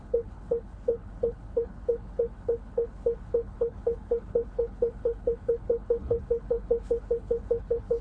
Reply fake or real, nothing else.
fake